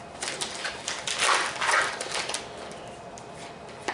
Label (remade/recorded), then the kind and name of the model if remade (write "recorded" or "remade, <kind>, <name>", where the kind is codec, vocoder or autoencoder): recorded